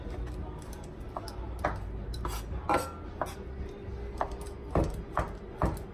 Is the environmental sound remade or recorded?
recorded